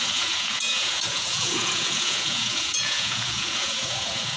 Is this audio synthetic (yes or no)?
yes